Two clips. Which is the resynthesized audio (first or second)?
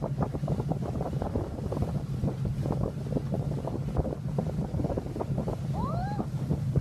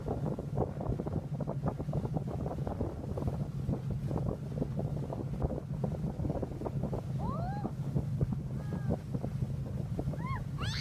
first